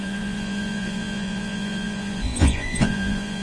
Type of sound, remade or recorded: remade